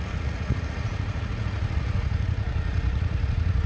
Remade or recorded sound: remade